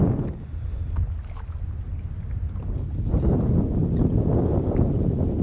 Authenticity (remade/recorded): recorded